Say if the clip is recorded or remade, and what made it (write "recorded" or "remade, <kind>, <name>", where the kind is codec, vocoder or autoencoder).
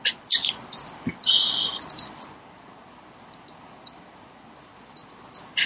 recorded